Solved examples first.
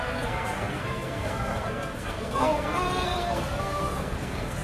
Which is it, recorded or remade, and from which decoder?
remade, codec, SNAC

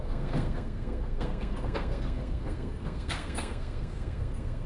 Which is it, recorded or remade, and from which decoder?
remade, codec, SNAC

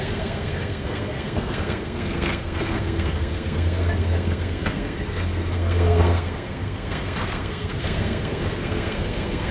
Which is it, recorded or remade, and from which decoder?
remade, codec, SNAC